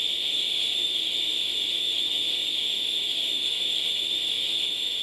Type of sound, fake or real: fake